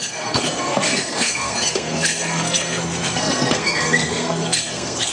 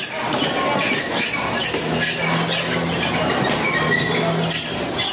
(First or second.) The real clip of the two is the second